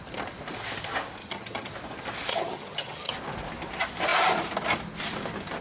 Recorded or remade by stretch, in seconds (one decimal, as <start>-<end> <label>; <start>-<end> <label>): 0.0-1.2 recorded; 1.2-1.7 remade; 1.7-2.3 recorded; 2.3-3.1 remade; 3.1-5.6 recorded